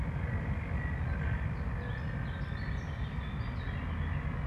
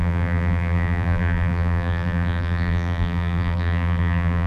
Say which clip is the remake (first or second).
second